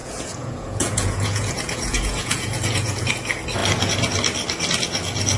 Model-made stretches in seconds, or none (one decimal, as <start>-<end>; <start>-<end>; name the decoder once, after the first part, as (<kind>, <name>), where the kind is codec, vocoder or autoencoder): 0.0-3.1 (vocoder, Vocos)